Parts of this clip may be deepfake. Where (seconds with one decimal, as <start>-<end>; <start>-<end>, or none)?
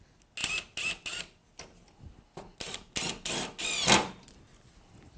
none